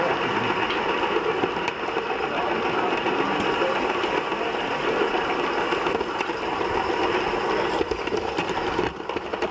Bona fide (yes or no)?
yes